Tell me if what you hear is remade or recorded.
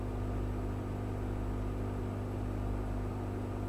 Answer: recorded